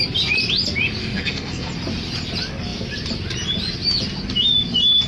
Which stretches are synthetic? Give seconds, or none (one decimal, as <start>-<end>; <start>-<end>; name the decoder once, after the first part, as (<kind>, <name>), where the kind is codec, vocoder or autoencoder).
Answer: 1.0-1.7 (codec, SNAC)